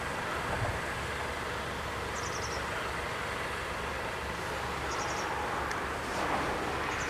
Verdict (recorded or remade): recorded